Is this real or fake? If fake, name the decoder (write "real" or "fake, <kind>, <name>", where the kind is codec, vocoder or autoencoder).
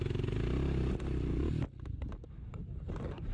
real